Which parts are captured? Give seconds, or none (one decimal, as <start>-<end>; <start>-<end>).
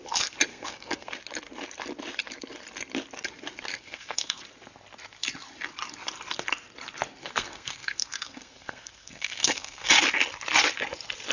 0.0-0.5; 1.1-3.7; 4.4-7.2; 9.9-11.3